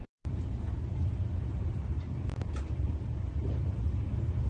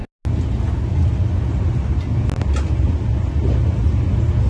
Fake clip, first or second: first